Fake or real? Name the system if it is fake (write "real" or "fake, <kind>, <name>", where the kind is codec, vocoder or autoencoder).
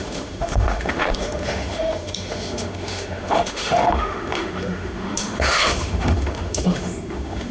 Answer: fake, autoencoder, DAC-VAE